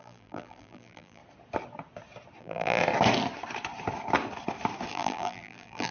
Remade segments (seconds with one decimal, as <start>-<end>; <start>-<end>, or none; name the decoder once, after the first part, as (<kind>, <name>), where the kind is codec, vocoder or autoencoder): 0.0-1.2 (vocoder, BigVGAN v2); 2.4-2.8; 4.9-5.9